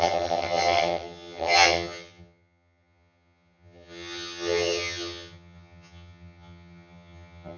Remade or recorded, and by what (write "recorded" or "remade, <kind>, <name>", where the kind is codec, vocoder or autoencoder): remade, vocoder, HiFi-GAN